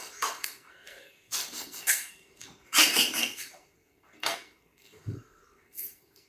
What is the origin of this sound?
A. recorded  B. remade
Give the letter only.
B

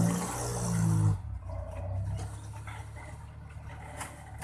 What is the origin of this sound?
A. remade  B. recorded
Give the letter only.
B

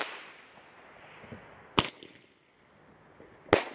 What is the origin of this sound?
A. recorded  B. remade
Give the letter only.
A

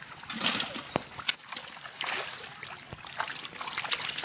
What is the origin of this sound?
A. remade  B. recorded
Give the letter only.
B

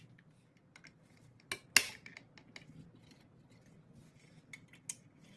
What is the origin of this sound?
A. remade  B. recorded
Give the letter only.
B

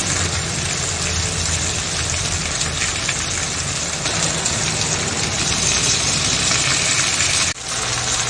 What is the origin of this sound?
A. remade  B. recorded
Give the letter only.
B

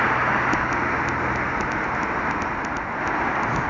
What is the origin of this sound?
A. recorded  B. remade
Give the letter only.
A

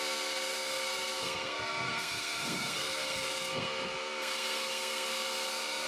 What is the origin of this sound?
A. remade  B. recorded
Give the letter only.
A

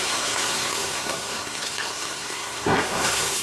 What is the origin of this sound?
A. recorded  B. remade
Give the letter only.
B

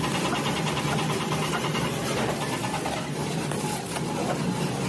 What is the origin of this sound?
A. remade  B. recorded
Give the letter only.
B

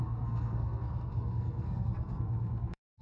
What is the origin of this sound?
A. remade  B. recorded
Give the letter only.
A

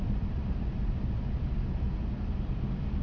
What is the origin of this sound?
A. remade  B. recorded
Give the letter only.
B